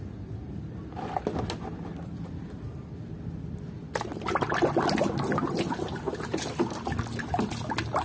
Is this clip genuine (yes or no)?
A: yes